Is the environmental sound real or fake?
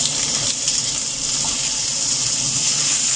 real